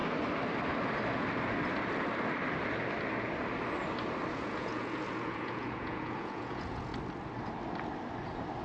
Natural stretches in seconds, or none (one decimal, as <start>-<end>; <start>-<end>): 0.0-4.3; 6.9-8.6